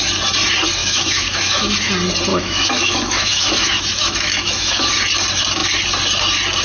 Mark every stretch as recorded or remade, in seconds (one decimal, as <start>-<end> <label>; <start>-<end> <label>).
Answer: 0.0-0.8 recorded; 0.8-1.9 remade; 1.9-2.3 recorded; 2.3-4.9 remade; 4.9-6.6 recorded